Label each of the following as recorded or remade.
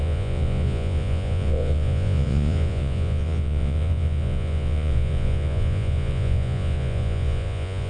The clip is remade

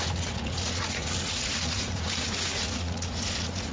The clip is remade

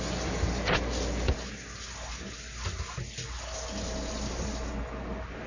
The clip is recorded